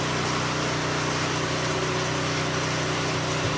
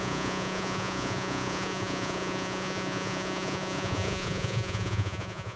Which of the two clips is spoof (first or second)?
second